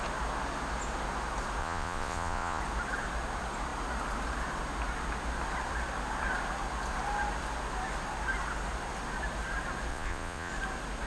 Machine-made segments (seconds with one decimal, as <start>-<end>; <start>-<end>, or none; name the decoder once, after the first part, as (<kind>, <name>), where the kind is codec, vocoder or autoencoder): 1.6-2.6 (vocoder, Vocos); 9.9-10.5